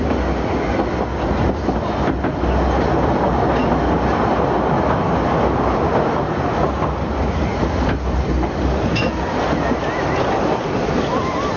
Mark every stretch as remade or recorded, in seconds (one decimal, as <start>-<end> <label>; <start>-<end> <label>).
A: 0.0-11.6 recorded